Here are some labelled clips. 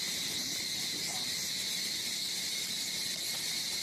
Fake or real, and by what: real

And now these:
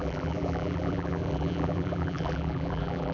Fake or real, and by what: fake, vocoder, BigVGAN v2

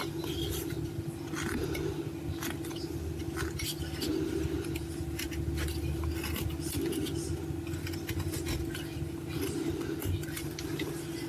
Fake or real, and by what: real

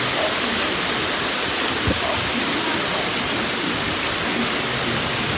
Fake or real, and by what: real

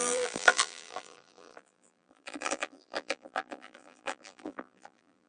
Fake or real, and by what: fake, vocoder, BigVGAN v2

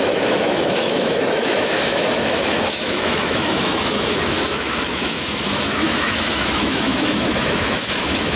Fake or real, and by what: fake, autoencoder, DAC-VAE